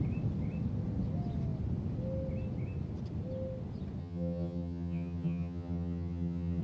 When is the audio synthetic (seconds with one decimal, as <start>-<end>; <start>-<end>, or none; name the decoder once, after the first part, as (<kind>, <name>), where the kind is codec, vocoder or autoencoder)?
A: 4.0-6.6 (vocoder, HiFi-GAN)

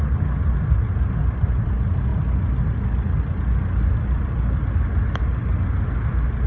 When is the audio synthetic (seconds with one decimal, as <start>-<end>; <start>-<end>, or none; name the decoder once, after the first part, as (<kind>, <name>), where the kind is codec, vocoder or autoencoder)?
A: none

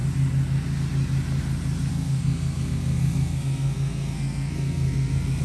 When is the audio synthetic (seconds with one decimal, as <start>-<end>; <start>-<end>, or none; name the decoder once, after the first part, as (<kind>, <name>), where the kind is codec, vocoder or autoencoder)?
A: 1.9-5.4 (codec, SNAC)

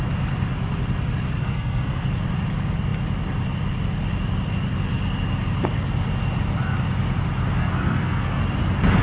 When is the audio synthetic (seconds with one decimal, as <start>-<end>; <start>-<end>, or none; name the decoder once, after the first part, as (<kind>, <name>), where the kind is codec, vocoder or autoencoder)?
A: 1.4-2.1 (codec, SNAC); 7.6-8.4

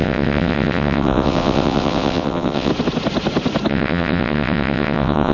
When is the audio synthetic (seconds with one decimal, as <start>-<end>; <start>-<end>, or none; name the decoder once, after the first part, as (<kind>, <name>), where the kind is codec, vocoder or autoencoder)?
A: 0.0-2.7 (vocoder, WaveNeXt); 3.7-5.3

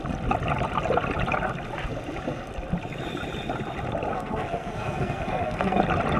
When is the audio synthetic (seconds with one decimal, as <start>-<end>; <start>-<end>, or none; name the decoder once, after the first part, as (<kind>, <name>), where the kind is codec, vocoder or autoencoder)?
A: 4.1-5.8 (codec, SNAC)